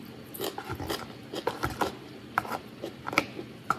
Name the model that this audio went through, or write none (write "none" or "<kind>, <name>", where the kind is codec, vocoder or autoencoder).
none